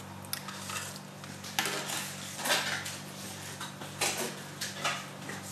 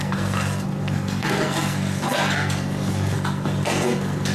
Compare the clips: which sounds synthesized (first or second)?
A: second